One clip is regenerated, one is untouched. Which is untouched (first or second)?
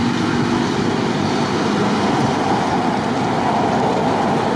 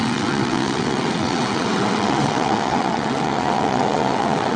first